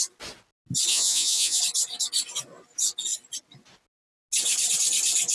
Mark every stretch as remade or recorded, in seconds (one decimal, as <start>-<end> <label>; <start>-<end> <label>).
0.0-0.9 recorded; 0.9-1.6 remade; 1.6-5.3 recorded